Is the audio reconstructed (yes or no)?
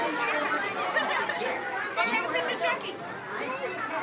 no